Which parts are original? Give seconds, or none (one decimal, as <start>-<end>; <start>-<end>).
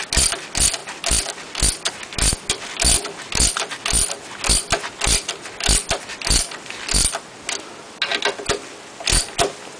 0.0-9.8